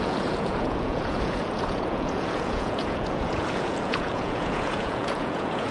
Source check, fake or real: fake